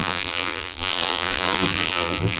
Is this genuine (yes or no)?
no